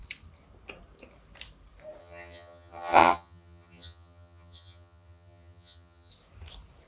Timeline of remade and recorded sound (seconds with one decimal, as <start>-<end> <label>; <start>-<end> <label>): 0.0-2.0 recorded; 2.0-6.1 remade; 6.1-6.9 recorded